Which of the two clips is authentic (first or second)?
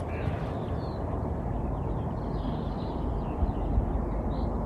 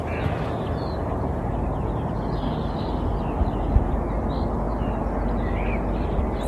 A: second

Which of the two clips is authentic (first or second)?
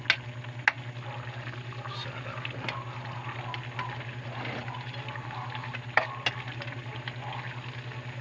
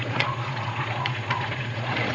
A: first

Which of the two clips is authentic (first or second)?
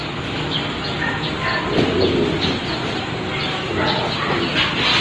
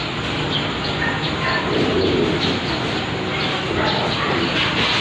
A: first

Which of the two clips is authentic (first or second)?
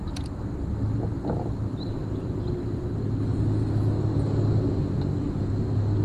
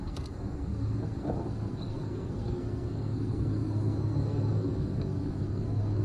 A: first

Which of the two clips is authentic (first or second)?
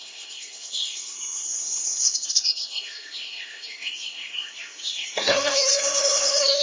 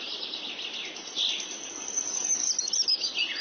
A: second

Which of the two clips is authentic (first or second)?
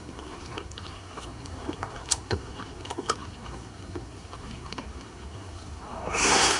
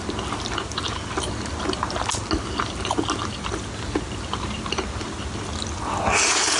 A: second